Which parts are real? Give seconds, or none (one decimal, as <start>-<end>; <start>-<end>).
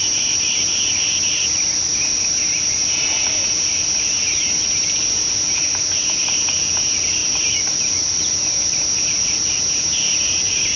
0.0-10.8